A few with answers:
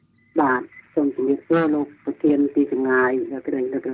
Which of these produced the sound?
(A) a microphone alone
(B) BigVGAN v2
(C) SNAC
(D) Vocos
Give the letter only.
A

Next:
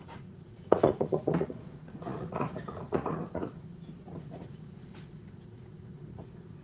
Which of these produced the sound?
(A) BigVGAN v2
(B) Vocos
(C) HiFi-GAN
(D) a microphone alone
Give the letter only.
B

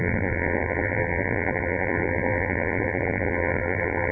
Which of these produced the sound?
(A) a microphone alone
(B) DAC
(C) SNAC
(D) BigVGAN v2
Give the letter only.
D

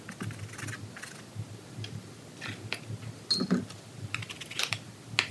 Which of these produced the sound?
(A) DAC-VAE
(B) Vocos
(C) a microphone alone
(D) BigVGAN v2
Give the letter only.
C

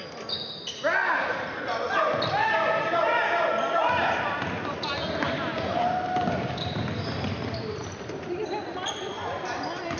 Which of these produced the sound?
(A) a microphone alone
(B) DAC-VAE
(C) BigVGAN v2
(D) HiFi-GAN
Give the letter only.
C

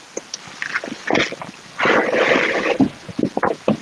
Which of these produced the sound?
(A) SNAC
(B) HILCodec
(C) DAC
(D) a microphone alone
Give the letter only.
D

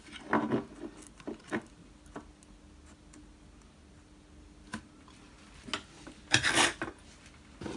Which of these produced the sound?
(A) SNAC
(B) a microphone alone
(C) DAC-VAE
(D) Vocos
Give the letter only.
B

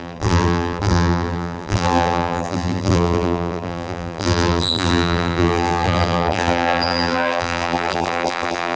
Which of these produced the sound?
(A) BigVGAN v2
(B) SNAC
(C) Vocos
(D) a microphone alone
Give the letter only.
A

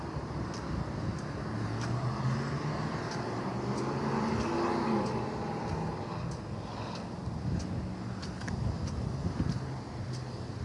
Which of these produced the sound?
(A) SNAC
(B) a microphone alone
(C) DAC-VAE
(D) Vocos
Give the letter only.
B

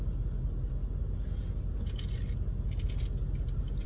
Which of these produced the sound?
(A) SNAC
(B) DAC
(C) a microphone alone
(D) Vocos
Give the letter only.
C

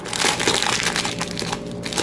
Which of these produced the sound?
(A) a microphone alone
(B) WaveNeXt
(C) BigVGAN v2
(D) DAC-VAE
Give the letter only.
A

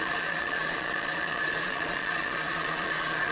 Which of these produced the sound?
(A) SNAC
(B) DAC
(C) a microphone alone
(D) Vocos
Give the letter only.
D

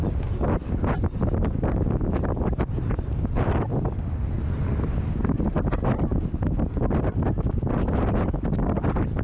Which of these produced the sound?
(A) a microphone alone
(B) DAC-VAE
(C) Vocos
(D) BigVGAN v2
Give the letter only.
A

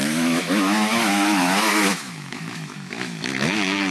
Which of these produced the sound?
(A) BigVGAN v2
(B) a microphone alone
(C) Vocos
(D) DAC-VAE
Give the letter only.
D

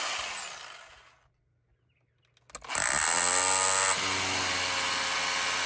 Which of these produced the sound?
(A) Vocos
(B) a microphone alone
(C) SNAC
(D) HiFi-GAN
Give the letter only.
B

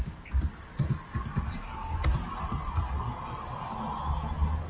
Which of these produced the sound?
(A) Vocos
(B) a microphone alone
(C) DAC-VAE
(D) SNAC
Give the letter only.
B